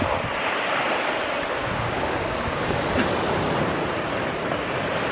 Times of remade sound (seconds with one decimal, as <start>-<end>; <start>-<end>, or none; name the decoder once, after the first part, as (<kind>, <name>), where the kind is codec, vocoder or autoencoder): 1.6-2.8 (codec, DAC)